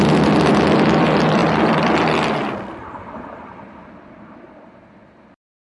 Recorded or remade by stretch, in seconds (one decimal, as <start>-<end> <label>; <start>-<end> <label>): 0.0-5.8 recorded